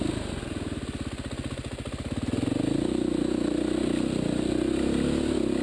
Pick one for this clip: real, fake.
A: real